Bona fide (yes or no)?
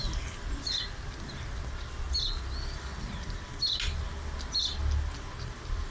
yes